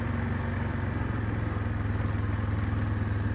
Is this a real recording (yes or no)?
yes